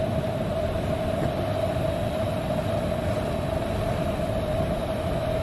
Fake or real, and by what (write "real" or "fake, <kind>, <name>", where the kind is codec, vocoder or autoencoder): real